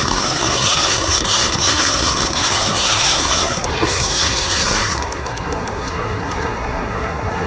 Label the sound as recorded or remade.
remade